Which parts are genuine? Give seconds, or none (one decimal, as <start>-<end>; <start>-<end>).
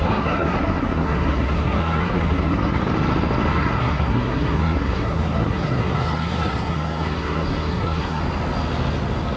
2.8-3.5; 8.2-9.4